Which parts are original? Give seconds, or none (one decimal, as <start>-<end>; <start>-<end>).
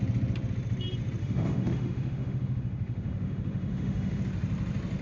0.0-1.2; 4.2-5.0